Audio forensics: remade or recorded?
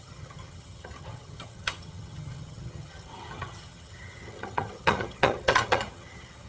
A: remade